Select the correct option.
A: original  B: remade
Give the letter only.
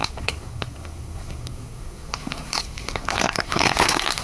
B